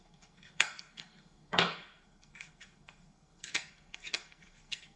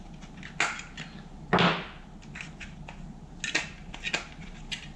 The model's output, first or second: first